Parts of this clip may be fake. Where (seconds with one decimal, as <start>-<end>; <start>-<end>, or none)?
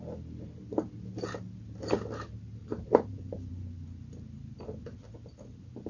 2.6-3.5